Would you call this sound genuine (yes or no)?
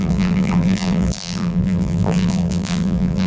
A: no